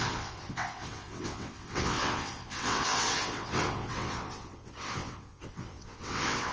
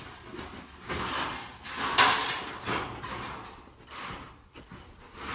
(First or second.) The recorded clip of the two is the second